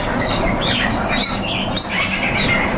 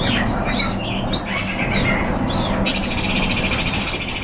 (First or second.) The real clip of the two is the second